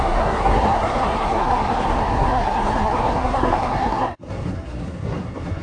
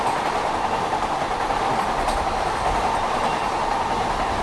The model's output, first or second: first